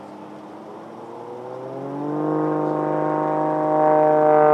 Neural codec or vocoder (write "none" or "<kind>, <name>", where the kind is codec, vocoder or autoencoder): none